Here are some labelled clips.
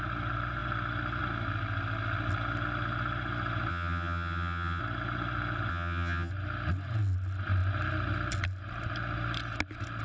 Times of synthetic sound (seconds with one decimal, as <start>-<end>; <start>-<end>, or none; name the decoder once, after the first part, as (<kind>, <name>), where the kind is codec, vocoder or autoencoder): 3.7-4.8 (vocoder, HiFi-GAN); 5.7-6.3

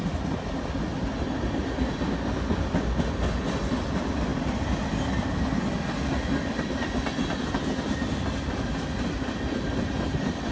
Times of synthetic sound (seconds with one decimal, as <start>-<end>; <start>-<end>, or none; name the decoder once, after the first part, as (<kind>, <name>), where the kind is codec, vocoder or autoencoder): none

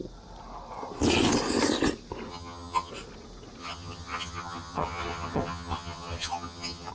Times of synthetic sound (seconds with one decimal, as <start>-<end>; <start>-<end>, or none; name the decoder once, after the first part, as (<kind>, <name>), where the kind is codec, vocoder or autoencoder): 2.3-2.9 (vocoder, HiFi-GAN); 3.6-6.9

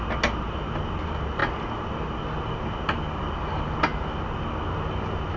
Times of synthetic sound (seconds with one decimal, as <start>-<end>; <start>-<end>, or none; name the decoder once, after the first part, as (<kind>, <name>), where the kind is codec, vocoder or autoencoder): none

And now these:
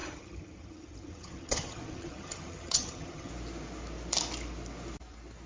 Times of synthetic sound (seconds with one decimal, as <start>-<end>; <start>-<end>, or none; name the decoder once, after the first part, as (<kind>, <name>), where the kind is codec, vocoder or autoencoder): 0.0-3.3 (vocoder, HiFi-GAN)

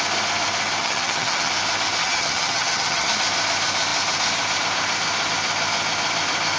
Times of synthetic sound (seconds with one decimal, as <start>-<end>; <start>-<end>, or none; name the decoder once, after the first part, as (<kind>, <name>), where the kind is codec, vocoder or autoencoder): 0.8-1.5 (vocoder, HiFi-GAN); 2.0-3.1

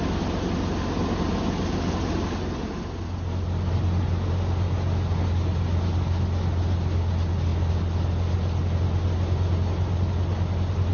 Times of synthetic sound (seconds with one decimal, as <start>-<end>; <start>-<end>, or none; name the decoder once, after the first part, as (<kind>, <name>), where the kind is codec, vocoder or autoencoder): none

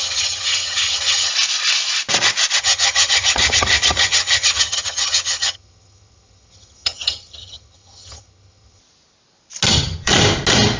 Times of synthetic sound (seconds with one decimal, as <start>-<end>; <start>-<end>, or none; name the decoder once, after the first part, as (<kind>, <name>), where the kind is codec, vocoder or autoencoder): 0.0-1.3 (vocoder, HiFi-GAN); 2.6-8.8; 9.7-10.1